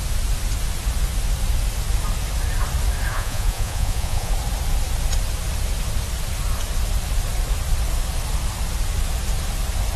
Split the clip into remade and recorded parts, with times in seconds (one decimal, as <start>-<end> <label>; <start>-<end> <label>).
0.0-3.1 recorded; 3.1-4.3 remade; 4.3-10.0 recorded